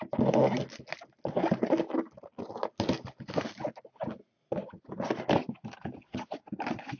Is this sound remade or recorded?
recorded